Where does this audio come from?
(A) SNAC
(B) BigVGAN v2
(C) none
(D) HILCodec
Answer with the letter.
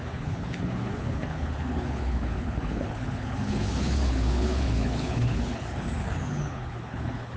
D